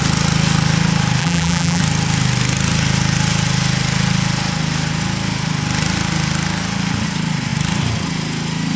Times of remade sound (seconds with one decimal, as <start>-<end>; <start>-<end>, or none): 1.2-1.8